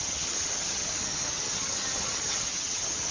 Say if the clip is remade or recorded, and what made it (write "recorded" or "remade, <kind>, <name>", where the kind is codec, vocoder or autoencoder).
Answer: remade, vocoder, HiFi-GAN